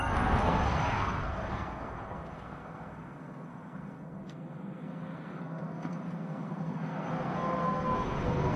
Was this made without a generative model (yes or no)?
no